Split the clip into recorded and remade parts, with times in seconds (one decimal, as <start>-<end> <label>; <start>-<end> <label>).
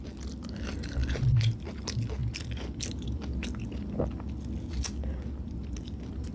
0.0-6.3 recorded